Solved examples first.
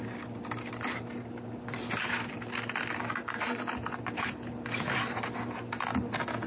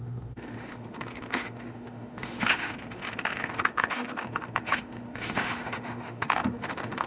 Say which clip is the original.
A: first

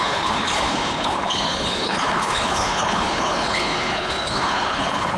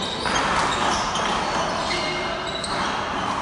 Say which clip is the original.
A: second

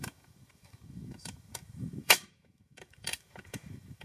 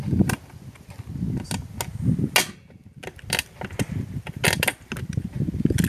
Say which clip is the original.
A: second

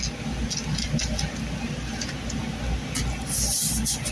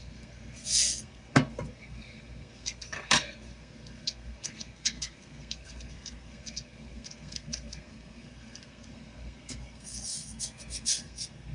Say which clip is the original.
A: first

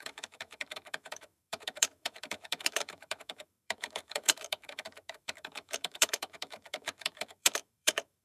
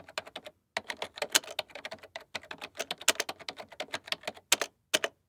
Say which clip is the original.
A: second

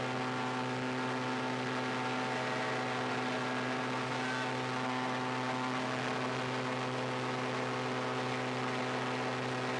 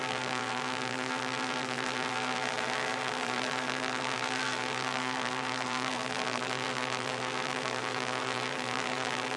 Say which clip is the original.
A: first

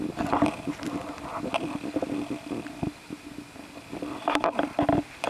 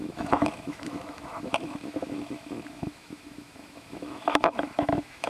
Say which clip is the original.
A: first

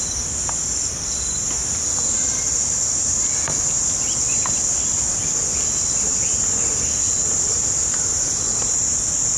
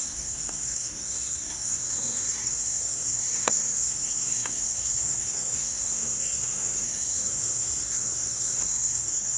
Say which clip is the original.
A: first